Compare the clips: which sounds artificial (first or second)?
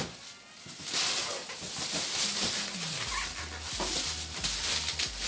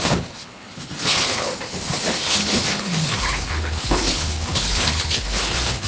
second